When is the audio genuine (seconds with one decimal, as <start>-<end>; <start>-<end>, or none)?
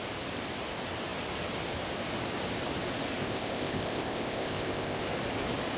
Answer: 0.0-3.2; 5.0-5.8